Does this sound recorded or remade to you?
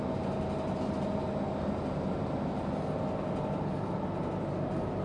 recorded